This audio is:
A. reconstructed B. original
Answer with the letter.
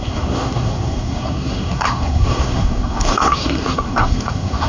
A